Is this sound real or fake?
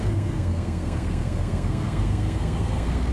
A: fake